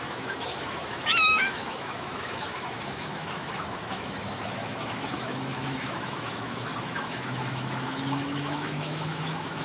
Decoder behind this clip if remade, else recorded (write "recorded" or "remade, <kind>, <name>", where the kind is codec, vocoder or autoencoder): remade, autoencoder, DAC-VAE